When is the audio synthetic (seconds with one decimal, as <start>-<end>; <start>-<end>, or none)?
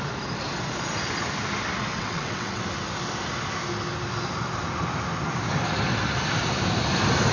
1.9-2.6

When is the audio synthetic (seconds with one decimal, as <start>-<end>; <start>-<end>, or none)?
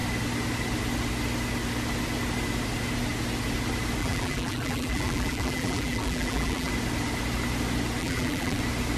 4.0-6.7; 8.0-8.6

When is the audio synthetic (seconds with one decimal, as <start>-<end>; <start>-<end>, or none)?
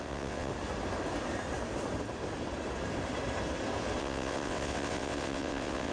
0.0-0.5; 4.0-5.9